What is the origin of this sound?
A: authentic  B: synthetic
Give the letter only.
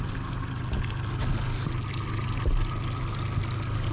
A